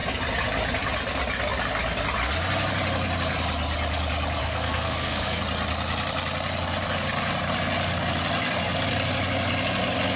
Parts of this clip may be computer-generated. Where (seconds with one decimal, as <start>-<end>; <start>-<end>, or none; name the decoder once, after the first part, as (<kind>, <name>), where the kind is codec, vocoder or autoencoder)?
4.4-5.4 (codec, SNAC)